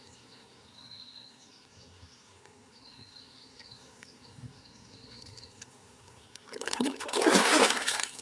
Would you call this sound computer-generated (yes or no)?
yes